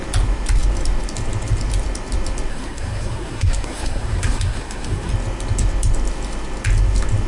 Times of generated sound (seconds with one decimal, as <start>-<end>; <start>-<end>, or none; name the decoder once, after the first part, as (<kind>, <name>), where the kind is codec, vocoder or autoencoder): 2.5-5.1 (codec, SNAC)